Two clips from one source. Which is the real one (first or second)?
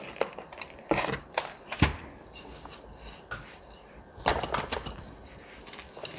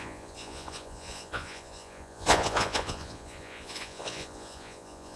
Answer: first